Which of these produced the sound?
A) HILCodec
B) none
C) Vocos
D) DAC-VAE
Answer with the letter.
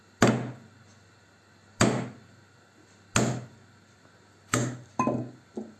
B